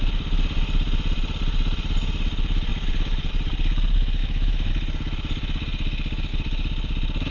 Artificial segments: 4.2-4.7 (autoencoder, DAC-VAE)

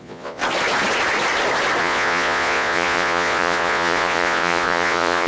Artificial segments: 0.0-0.4 (vocoder, Vocos); 1.8-5.3

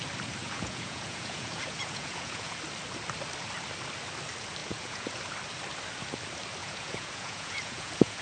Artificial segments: 0.4-2.6 (vocoder, Vocos); 4.6-5.2; 6.6-8.2